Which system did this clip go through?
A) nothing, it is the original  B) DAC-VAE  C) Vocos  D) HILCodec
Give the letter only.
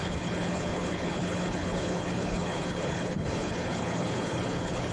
D